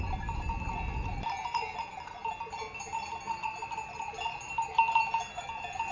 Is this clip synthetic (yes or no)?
no